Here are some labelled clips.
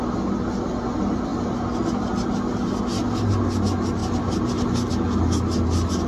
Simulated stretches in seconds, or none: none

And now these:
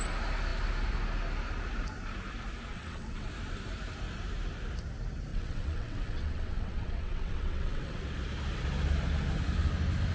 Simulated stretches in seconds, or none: 2.7-3.3; 5.3-8.0

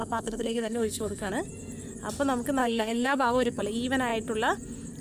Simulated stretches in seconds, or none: 0.0-1.3; 2.6-3.6

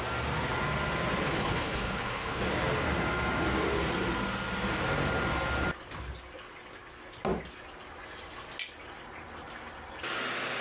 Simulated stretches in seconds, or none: 1.2-2.4

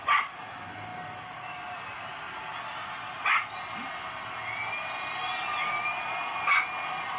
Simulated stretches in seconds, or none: none

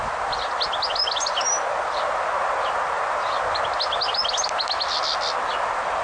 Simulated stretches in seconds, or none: none